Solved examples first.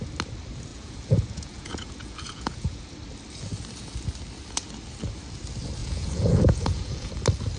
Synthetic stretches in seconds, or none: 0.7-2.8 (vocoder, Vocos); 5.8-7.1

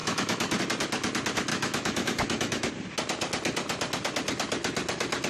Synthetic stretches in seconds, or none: 0.0-0.6 (autoencoder, DAC-VAE); 1.5-2.7